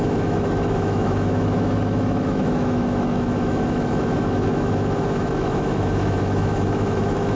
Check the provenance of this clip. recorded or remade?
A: remade